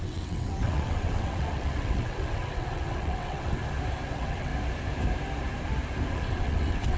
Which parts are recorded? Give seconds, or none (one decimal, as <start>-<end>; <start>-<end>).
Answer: 3.6-4.1; 4.5-6.1